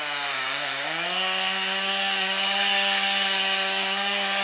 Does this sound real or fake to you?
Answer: fake